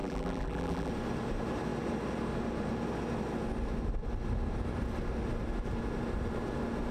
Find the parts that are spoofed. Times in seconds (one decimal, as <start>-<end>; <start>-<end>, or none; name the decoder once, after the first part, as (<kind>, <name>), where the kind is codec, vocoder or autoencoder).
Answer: 0.0-0.9 (vocoder, BigVGAN v2)